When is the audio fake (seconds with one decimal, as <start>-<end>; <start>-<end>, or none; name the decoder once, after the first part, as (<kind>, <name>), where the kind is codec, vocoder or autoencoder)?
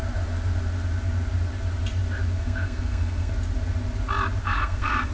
2.4-3.3 (codec, SNAC); 4.4-5.1